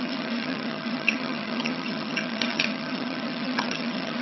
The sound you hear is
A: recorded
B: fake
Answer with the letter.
B